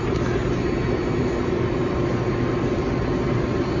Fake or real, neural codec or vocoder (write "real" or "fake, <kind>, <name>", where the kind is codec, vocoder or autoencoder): real